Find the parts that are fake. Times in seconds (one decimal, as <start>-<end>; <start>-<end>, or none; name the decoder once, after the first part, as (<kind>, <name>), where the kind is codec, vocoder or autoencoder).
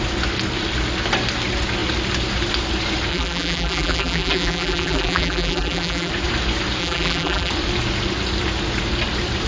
3.1-6.1 (vocoder, BigVGAN v2); 6.8-7.5